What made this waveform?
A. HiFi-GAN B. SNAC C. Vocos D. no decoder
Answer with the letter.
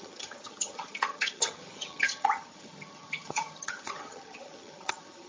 A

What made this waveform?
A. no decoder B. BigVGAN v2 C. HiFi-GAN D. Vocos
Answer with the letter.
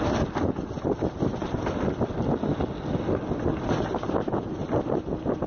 A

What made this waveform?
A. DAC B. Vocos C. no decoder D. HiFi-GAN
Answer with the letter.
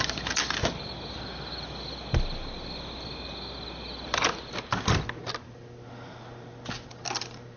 C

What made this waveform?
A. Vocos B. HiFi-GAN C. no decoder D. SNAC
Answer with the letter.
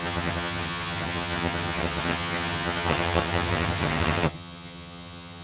B